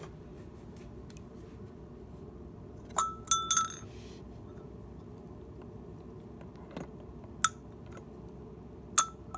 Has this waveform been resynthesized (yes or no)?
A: no